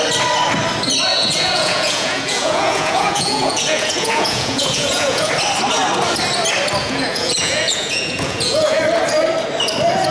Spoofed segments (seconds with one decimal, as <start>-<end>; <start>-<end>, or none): 1.1-5.3; 6.8-8.8